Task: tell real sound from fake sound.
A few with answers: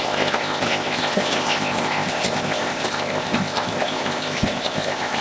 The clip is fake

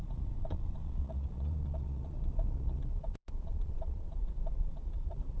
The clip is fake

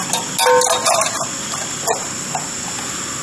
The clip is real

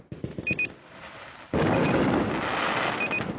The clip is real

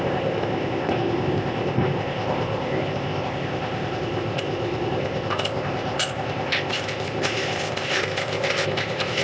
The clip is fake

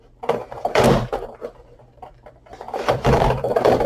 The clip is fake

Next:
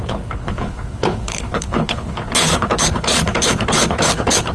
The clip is fake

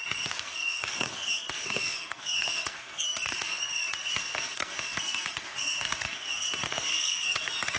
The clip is fake